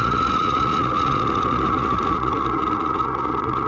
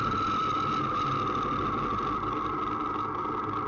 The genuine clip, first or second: second